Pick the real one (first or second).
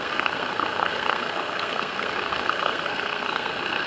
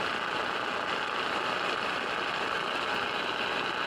second